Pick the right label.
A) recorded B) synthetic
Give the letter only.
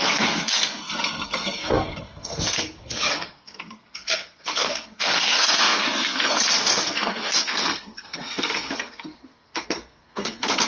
B